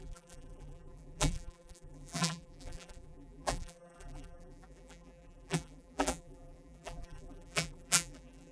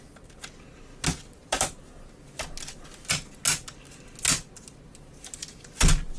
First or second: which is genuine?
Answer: second